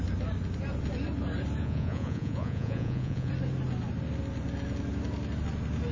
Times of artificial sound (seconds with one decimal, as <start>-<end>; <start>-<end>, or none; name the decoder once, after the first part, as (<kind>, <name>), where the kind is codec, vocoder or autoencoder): 1.6-3.3 (vocoder, Vocos)